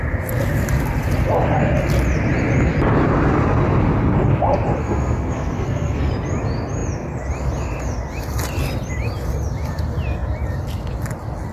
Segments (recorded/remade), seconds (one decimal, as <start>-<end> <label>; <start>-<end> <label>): 0.0-4.8 recorded; 4.8-6.1 remade; 6.1-11.5 recorded